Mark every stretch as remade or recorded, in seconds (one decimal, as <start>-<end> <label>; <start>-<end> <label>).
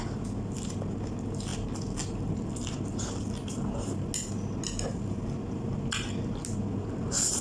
0.0-7.4 recorded